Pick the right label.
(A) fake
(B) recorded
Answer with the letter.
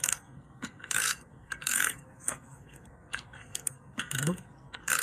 A